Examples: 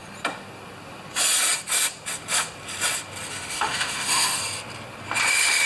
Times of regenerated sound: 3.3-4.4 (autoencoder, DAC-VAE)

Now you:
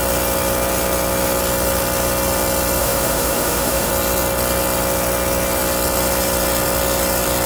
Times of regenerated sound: 2.8-3.9 (autoencoder, DAC-VAE)

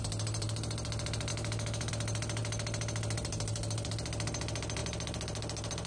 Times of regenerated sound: 1.3-1.9 (autoencoder, DAC-VAE)

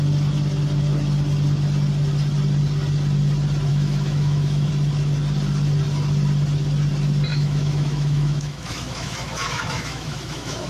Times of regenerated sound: 3.7-4.7 (autoencoder, DAC-VAE); 7.3-10.7

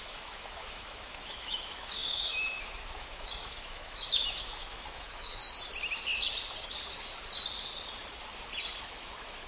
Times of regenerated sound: 0.0-5.4 (autoencoder, DAC-VAE); 8.8-9.5

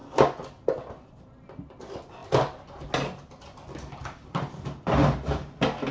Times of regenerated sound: none

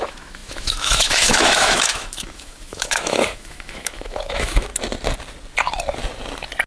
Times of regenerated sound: 0.0-4.7 (autoencoder, DAC-VAE)

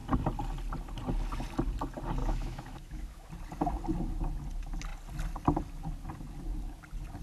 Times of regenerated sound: 2.2-3.3 (autoencoder, DAC-VAE)